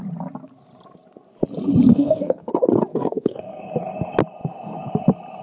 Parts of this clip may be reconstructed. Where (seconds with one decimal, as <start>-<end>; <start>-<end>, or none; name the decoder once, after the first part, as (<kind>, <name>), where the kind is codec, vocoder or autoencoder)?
1.9-2.5 (codec, SNAC); 2.9-3.4